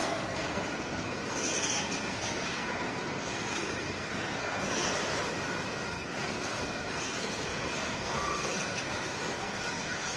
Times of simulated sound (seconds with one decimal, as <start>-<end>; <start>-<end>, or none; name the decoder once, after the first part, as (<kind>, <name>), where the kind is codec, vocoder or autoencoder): 0.0-5.0 (codec, SNAC); 5.9-10.2